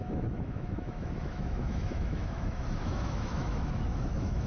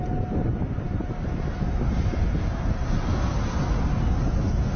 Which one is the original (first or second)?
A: second